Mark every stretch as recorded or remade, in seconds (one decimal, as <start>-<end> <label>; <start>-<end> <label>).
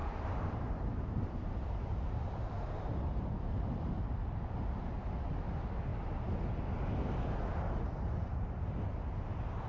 0.0-4.9 remade; 4.9-9.7 recorded